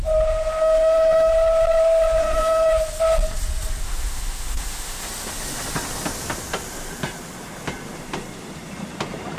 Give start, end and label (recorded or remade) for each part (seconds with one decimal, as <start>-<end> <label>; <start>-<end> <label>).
0.0-0.6 recorded; 0.6-1.3 remade; 1.3-2.2 recorded; 2.2-2.7 remade; 2.7-3.8 recorded; 3.8-5.0 remade; 5.0-9.4 recorded